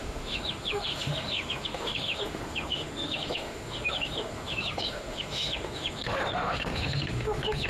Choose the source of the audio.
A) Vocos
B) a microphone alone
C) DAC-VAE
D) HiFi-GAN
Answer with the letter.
C